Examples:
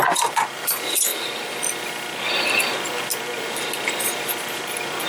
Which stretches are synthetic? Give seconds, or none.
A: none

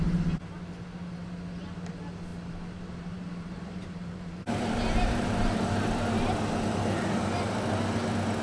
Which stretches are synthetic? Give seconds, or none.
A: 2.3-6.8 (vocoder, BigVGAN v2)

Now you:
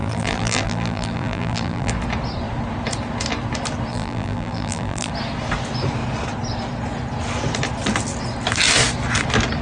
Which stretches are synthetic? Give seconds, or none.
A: 0.0-1.9 (vocoder, BigVGAN v2); 3.9-5.1

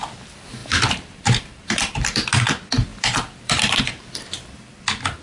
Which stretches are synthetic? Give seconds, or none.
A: 0.6-2.3 (vocoder, BigVGAN v2); 2.9-3.6

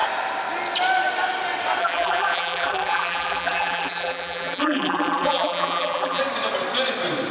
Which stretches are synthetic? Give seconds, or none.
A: 1.8-6.2 (vocoder, BigVGAN v2)

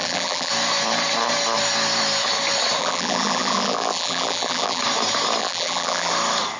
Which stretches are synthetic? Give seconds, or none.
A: 0.0-0.5 (vocoder, BigVGAN v2); 2.8-4.8; 5.4-6.1